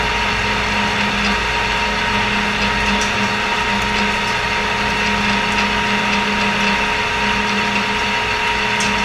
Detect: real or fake real